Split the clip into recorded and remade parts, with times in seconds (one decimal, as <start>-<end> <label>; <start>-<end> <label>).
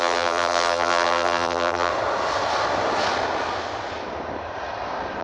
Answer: 0.0-1.9 remade; 1.9-5.2 recorded